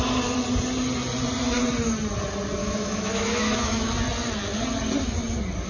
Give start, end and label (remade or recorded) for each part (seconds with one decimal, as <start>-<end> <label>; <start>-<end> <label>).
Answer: 0.0-2.6 recorded; 2.6-3.9 remade; 3.9-5.7 recorded